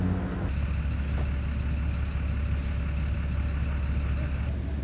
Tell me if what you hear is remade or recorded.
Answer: recorded